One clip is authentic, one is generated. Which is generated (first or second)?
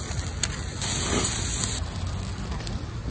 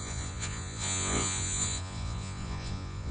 second